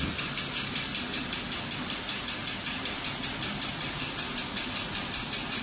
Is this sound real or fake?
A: real